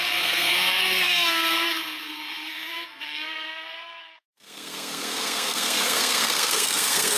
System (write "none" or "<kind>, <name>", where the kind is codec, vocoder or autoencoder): codec, SNAC